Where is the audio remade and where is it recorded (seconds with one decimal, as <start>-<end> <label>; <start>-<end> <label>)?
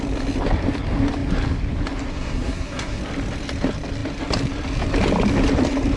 0.0-2.1 recorded; 2.1-3.0 remade; 3.0-6.0 recorded